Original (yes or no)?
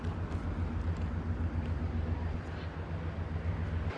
yes